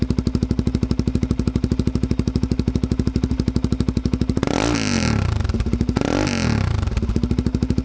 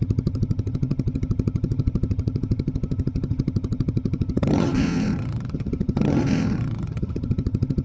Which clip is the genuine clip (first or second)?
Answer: first